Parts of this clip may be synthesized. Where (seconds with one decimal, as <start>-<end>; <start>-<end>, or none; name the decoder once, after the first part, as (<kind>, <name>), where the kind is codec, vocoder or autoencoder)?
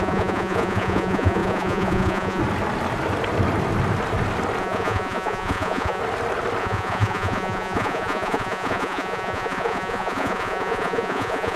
0.0-2.4 (vocoder, Vocos); 4.6-6.0; 6.6-11.6